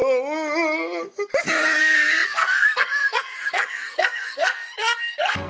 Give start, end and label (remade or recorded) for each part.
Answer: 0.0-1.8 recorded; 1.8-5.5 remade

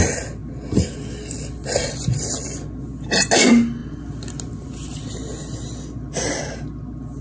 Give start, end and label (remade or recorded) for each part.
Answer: 0.0-7.2 recorded

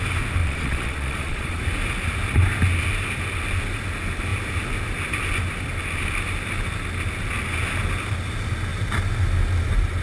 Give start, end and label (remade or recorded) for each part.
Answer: 0.0-0.4 recorded; 0.4-1.6 remade; 1.6-10.0 recorded

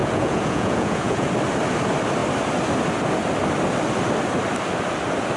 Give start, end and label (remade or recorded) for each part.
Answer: 0.0-1.3 remade; 1.3-5.4 recorded